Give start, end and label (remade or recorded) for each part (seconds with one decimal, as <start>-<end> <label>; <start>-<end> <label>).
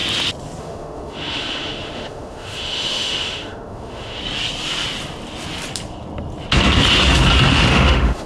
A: 0.0-0.6 recorded; 0.6-4.2 remade; 4.2-7.5 recorded; 7.5-8.3 remade